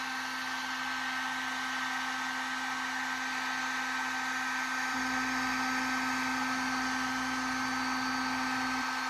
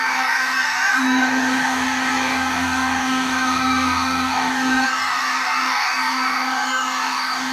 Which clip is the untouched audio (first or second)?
first